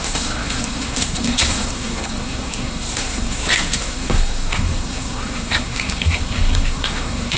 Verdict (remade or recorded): remade